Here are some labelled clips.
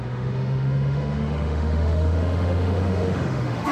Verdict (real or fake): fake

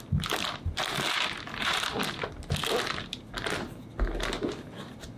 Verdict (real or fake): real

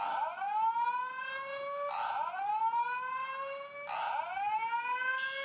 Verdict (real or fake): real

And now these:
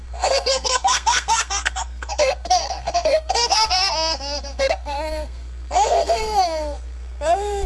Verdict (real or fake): fake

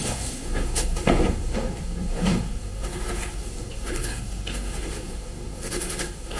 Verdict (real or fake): fake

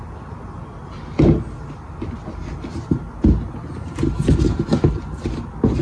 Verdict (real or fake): real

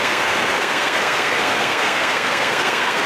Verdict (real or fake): fake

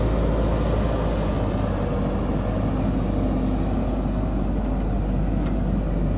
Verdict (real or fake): real